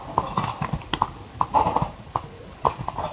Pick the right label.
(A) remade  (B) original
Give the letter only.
B